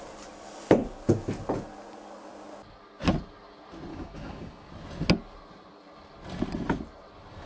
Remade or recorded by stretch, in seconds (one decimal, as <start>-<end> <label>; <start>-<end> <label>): 0.0-3.9 recorded; 3.9-4.7 remade; 4.7-7.5 recorded